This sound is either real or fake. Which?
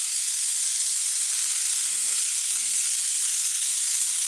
fake